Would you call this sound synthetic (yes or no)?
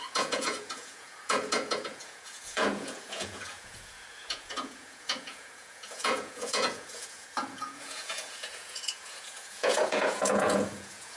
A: yes